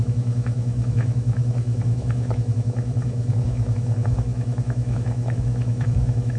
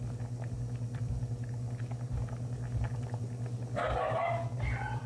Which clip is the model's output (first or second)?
first